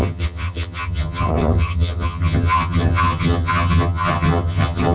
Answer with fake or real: fake